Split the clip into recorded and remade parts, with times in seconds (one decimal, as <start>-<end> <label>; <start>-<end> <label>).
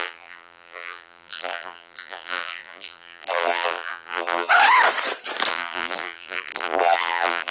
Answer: 0.0-4.5 remade; 4.5-5.5 recorded; 5.5-7.5 remade